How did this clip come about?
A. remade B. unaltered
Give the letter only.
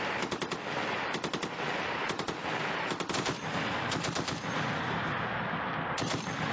B